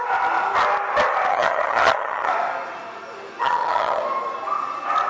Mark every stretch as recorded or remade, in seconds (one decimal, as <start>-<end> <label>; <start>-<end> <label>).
0.0-1.3 recorded; 1.3-2.3 remade; 2.3-3.4 recorded; 3.4-4.0 remade; 4.0-5.1 recorded